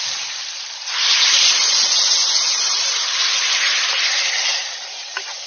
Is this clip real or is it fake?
fake